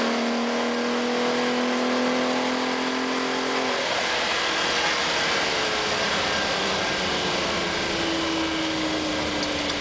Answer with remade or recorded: recorded